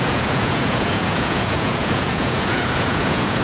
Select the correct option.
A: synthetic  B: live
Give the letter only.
A